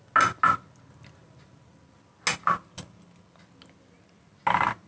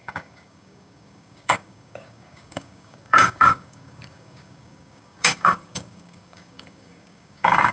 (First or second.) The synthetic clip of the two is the second